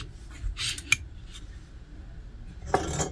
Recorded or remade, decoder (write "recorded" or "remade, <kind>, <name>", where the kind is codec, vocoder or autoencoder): recorded